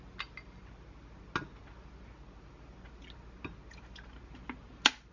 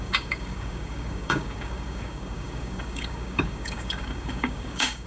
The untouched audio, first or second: first